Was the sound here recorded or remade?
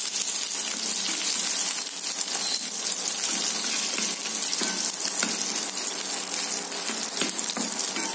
recorded